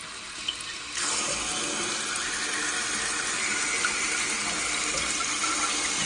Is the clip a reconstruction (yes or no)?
no